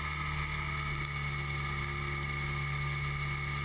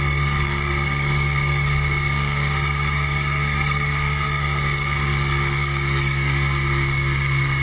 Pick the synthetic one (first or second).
second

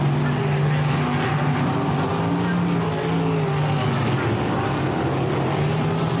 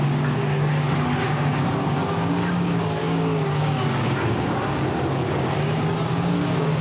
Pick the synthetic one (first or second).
second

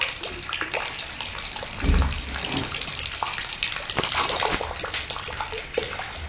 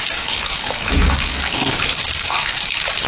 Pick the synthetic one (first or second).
second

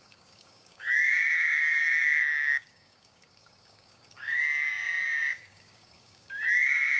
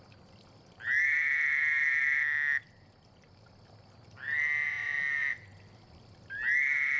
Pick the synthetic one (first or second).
first